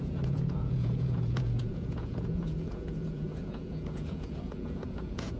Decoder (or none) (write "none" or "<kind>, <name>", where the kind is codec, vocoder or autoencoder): vocoder, Vocos